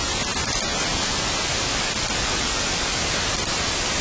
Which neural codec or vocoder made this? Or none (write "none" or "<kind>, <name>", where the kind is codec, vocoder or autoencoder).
none